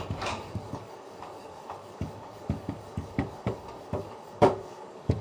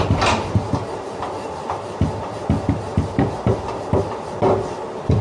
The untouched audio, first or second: second